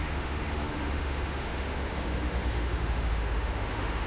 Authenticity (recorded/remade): remade